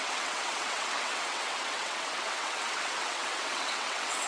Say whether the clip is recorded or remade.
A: remade